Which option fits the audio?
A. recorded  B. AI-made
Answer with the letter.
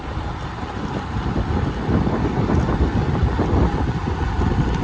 A